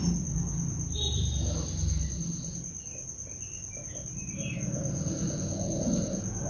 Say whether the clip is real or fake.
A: real